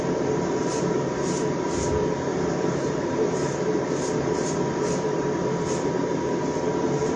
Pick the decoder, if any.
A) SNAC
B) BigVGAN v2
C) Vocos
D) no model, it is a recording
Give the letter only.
B